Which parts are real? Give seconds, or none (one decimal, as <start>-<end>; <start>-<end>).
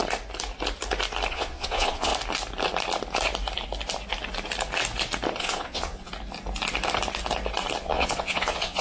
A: 0.0-1.3; 2.1-5.4; 6.1-7.8